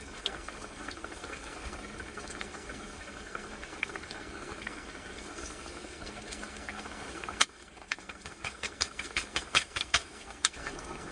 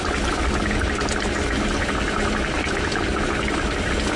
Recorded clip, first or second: second